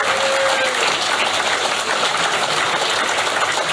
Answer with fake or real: real